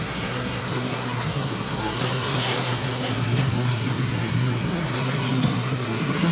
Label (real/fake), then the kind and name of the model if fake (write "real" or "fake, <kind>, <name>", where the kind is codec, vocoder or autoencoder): fake, codec, SNAC